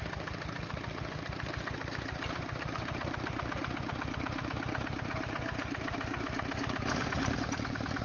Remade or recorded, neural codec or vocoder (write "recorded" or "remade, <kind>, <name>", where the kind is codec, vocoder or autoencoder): remade, vocoder, BigVGAN v2